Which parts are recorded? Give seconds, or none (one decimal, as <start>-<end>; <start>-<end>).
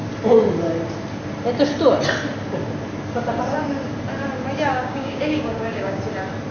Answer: 0.0-4.7; 6.0-6.5